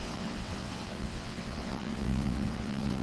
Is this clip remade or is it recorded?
remade